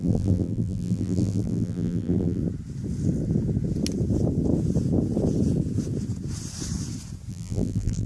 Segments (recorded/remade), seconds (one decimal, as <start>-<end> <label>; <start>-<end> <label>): 0.0-2.4 remade; 2.4-7.3 recorded; 7.3-8.1 remade